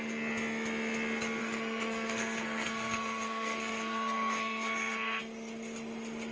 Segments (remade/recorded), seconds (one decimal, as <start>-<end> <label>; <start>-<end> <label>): 0.0-1.4 recorded; 1.4-5.2 remade; 5.2-6.3 recorded